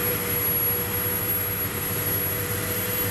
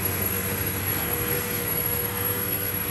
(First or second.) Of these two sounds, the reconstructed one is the second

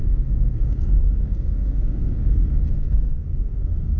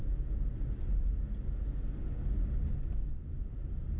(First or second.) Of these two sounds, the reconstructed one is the first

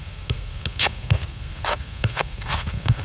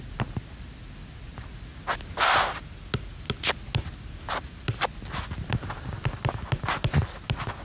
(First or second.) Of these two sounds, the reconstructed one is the first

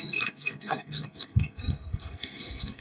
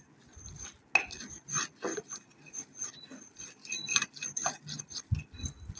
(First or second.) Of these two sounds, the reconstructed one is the first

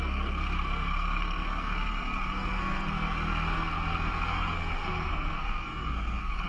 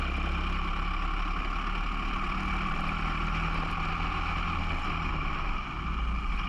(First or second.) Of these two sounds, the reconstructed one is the first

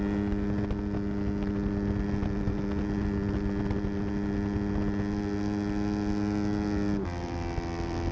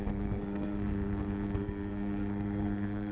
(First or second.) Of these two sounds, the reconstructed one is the second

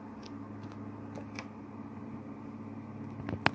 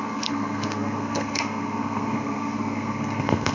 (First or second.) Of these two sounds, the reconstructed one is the second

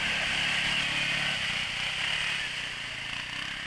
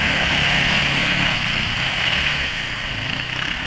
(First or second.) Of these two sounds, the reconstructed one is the second